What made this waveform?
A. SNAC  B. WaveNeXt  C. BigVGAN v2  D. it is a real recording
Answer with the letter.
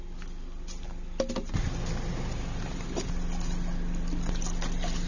D